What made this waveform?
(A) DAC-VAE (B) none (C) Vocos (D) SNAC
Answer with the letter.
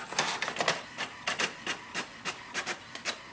B